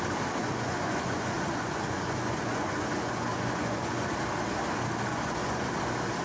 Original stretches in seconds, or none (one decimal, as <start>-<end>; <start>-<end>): 0.0-0.4; 4.1-5.1; 5.7-6.2